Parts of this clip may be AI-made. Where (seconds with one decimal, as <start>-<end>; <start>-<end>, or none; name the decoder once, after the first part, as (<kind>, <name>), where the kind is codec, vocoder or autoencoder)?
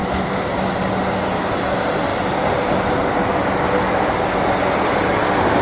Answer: none